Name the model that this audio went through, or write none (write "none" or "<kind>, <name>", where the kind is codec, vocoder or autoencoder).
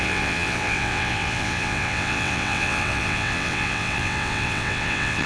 vocoder, WaveNeXt